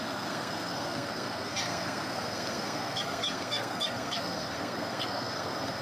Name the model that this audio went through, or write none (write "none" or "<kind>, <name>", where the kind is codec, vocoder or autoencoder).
codec, SNAC